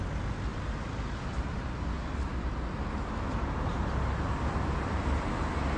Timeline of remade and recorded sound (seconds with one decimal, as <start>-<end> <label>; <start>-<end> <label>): 0.0-5.8 recorded